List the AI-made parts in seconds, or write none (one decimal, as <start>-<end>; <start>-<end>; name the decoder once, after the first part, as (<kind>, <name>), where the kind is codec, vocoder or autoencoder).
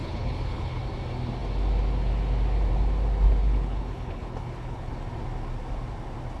0.0-0.8 (codec, HILCodec); 3.4-4.9